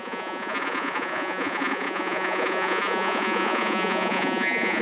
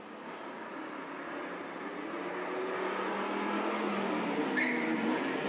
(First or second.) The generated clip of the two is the first